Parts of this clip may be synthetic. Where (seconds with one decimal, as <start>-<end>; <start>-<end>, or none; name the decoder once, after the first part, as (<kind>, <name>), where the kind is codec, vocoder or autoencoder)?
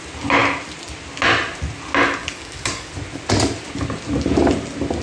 2.2-2.9 (codec, DAC)